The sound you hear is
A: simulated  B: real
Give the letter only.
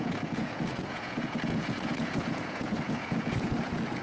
A